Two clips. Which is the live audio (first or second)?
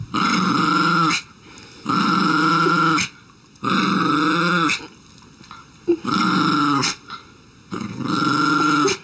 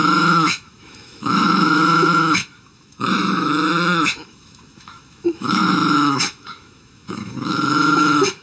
first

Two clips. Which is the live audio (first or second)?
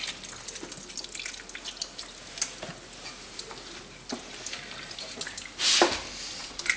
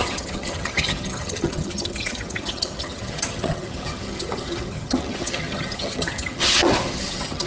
first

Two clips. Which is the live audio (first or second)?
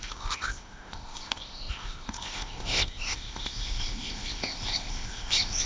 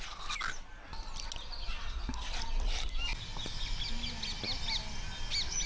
second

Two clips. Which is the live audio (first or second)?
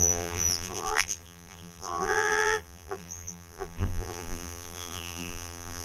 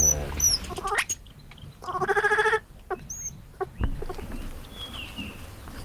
second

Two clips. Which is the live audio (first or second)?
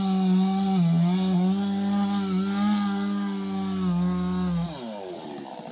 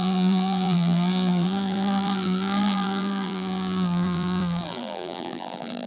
first